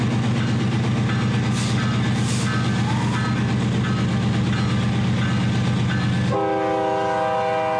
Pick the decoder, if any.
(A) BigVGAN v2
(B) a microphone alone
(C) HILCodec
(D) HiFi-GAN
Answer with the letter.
B